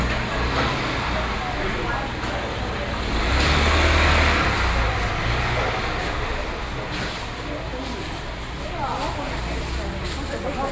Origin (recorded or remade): recorded